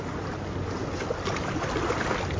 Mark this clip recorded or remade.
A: recorded